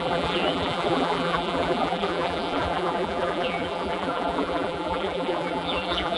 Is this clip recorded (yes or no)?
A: no